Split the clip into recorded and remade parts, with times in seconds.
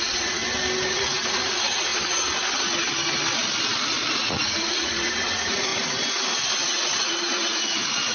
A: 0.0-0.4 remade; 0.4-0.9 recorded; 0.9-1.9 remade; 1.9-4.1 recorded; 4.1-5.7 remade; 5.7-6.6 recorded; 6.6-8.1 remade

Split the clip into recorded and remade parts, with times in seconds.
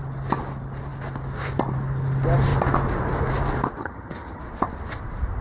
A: 0.0-3.8 recorded; 3.8-4.4 remade; 4.4-5.4 recorded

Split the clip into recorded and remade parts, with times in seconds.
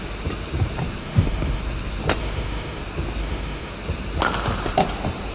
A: 0.0-1.0 recorded; 1.0-1.6 remade; 1.6-2.2 recorded; 2.2-2.8 remade; 2.8-3.2 recorded; 3.2-3.7 remade; 3.7-5.3 recorded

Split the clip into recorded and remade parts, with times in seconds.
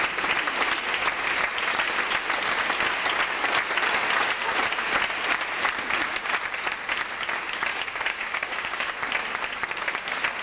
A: 0.0-7.7 recorded; 7.7-8.9 remade; 8.9-10.4 recorded